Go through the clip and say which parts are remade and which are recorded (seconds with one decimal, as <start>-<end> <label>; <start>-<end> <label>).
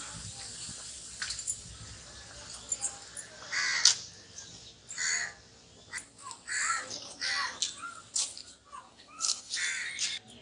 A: 0.0-8.9 recorded; 8.9-9.5 remade; 9.5-10.4 recorded